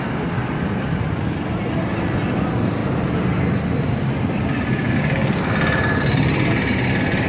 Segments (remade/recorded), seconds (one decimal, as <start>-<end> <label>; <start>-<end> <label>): 0.0-7.3 recorded